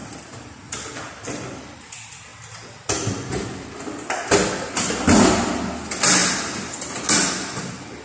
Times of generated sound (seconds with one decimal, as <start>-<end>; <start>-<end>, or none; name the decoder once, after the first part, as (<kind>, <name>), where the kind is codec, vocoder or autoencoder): none

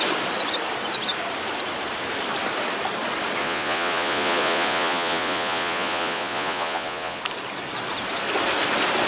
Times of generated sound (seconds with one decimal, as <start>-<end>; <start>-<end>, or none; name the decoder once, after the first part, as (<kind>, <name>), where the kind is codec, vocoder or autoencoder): 3.4-7.2 (vocoder, Vocos)

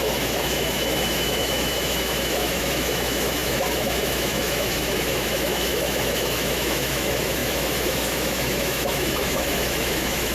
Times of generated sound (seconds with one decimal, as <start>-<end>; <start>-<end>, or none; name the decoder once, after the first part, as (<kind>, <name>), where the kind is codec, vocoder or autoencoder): 0.0-10.3 (autoencoder, DAC-VAE)

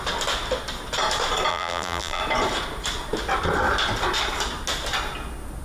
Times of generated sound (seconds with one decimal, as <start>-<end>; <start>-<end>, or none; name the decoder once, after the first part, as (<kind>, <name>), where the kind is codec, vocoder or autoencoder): 1.5-2.2 (vocoder, BigVGAN v2)

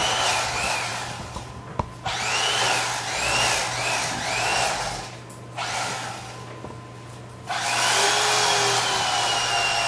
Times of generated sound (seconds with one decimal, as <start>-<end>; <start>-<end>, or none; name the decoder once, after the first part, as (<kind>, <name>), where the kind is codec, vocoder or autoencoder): none